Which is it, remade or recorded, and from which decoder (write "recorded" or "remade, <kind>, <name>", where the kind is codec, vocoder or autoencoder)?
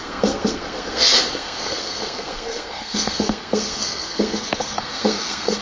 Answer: remade, codec, SNAC